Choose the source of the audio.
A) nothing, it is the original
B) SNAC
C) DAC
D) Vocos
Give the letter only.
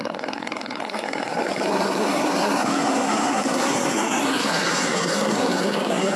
B